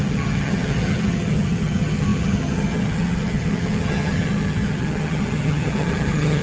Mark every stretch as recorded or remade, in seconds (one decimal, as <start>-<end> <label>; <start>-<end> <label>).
0.0-6.4 remade

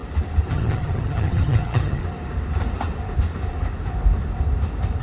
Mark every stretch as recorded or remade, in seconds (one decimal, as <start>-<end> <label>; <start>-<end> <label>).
0.0-0.5 recorded; 0.5-2.0 remade; 2.0-5.0 recorded

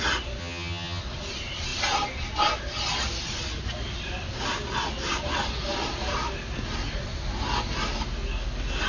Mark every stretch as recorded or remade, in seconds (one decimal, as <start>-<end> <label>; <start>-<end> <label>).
0.0-0.4 recorded; 0.4-1.0 remade; 1.0-8.9 recorded

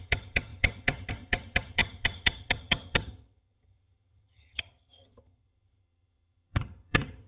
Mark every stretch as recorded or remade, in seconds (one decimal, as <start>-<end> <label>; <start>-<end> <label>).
0.0-7.3 remade